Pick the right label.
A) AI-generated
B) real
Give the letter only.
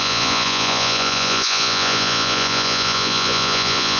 A